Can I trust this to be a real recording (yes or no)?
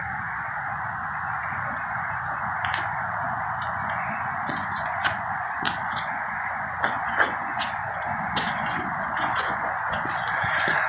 no